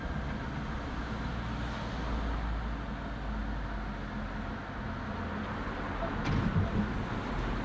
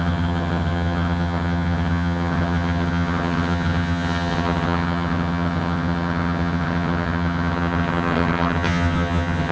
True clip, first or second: first